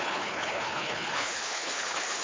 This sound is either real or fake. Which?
fake